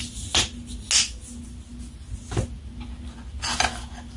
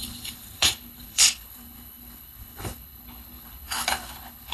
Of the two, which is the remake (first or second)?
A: second